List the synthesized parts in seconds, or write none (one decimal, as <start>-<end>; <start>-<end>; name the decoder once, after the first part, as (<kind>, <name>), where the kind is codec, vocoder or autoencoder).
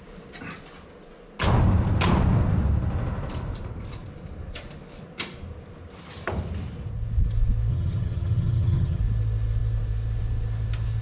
7.7-9.0 (vocoder, HiFi-GAN)